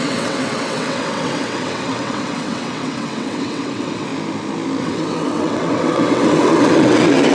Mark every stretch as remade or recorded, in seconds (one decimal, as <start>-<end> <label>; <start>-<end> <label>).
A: 0.0-4.1 remade; 4.1-4.8 recorded; 4.8-7.3 remade